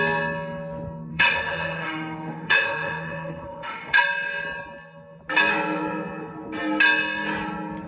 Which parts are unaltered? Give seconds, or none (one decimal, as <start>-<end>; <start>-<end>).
0.0-1.1; 4.0-7.9